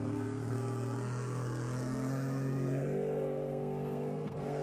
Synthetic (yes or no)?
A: yes